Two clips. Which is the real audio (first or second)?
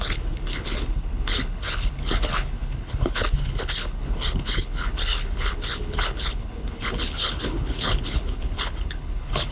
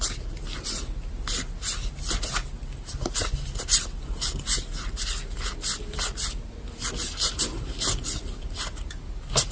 second